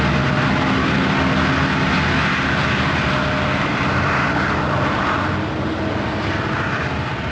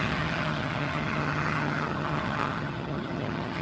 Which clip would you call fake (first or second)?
second